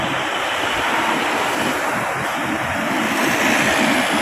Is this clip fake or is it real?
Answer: real